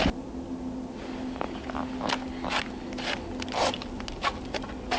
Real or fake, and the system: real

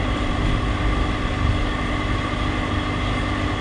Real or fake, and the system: real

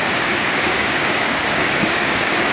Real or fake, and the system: fake, codec, DAC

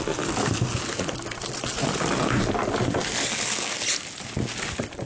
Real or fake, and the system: real